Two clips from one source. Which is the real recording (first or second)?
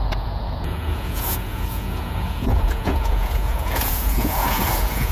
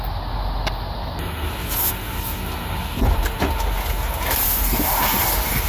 second